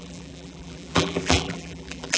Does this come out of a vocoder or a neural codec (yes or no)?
yes